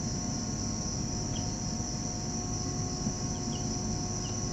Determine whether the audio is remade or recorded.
recorded